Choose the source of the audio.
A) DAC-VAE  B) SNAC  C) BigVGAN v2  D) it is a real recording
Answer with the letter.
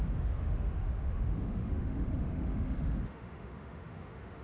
A